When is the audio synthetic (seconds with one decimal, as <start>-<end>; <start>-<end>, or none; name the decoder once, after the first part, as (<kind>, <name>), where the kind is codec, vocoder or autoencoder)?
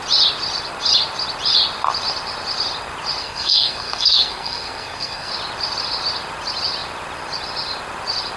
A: 3.2-5.3 (codec, SNAC)